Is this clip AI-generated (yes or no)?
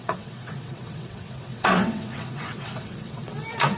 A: yes